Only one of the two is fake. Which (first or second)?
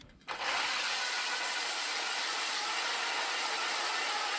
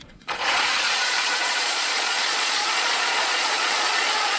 second